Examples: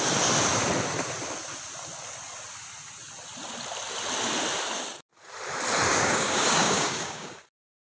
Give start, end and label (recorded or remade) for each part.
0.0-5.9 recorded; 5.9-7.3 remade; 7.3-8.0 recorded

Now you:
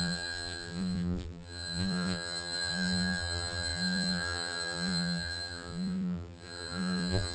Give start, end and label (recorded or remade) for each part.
0.0-7.3 remade

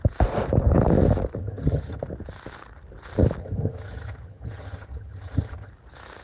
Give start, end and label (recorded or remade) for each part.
0.0-1.4 recorded; 1.4-2.0 remade; 2.0-3.4 recorded; 3.4-5.7 remade; 5.7-6.2 recorded

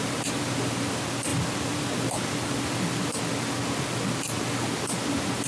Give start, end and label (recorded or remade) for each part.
0.0-5.5 recorded

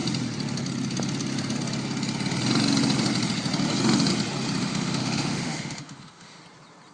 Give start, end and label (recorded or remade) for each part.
0.0-4.6 recorded; 4.6-6.4 remade; 6.4-6.9 recorded

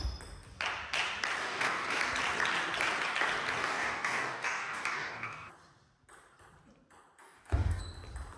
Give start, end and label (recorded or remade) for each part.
0.0-1.4 recorded; 1.4-2.0 remade; 2.0-3.6 recorded; 3.6-5.5 remade; 5.5-7.2 recorded; 7.2-7.8 remade; 7.8-8.4 recorded

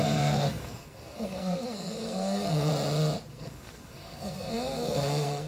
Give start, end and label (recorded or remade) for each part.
0.0-2.7 remade; 2.7-3.3 recorded; 3.3-5.5 remade